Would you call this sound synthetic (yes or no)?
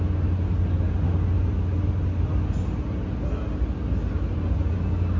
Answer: no